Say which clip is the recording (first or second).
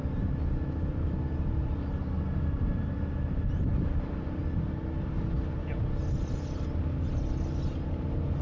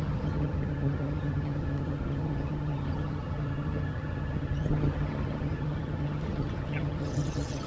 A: first